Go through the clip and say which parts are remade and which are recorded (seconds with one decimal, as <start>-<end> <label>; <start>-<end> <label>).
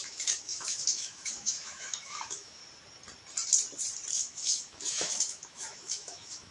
0.0-2.6 remade; 2.6-4.1 recorded; 4.1-6.5 remade